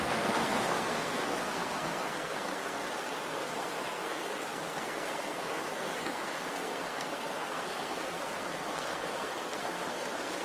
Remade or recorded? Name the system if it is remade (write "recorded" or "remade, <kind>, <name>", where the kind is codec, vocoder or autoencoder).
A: remade, codec, SNAC